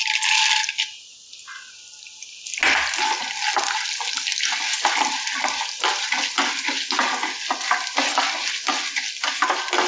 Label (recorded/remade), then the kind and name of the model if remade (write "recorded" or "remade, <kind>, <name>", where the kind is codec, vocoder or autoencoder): recorded